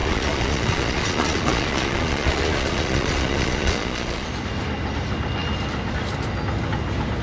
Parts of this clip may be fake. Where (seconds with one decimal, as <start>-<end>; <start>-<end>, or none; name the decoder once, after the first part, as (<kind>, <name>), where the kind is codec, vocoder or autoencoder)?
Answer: 0.0-4.3 (vocoder, Vocos)

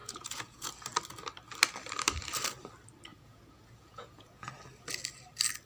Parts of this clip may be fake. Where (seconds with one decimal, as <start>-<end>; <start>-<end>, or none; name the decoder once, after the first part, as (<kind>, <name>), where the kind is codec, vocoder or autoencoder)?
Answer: 0.0-0.7 (vocoder, Vocos); 3.1-4.5

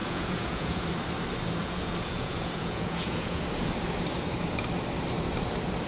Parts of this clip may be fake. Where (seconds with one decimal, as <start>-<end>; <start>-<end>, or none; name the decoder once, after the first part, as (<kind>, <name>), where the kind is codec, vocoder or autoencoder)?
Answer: 0.0-0.8 (vocoder, Vocos); 1.6-3.4